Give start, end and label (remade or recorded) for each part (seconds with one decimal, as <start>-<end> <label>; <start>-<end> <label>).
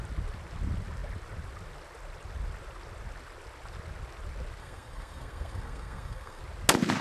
0.0-4.6 recorded; 4.6-6.4 remade; 6.4-7.0 recorded